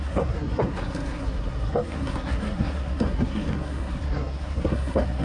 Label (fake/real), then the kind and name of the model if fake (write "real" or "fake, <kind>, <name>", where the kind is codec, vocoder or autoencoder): fake, codec, SNAC